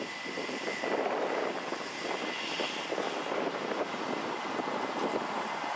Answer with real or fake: real